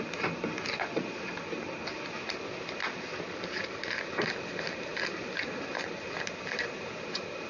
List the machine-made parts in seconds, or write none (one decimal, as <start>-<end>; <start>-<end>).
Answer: 0.9-1.4